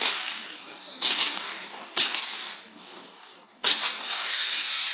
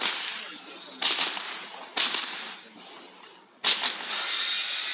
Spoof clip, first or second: first